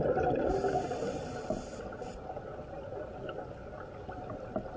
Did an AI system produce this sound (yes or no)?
no